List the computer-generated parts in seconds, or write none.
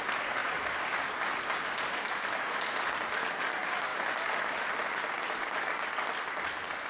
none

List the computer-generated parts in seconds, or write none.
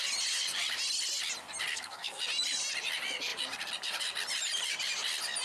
1.7-2.2